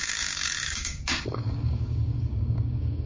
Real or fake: fake